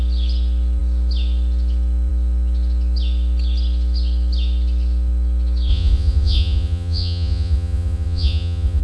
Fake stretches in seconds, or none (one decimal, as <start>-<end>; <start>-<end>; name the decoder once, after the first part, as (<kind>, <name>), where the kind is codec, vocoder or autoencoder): 5.7-8.8 (vocoder, Vocos)

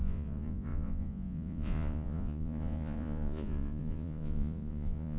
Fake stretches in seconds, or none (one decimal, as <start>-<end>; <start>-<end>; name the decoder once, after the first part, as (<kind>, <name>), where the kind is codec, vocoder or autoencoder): 0.0-5.2 (vocoder, Vocos)

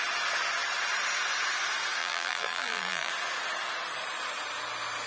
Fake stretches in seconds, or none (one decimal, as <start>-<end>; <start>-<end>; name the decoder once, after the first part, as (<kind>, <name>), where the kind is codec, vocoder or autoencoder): 2.0-3.1 (vocoder, BigVGAN v2)

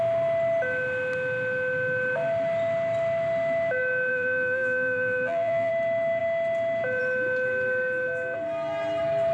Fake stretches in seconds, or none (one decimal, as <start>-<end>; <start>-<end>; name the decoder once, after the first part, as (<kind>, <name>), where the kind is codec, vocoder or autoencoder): 4.1-5.7 (vocoder, BigVGAN v2)

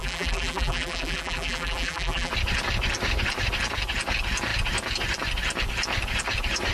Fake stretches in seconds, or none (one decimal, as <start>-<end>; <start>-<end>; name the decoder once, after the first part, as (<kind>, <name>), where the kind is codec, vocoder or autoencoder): 0.0-2.3 (vocoder, BigVGAN v2)